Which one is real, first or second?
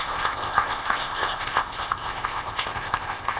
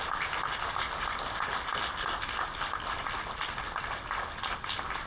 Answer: second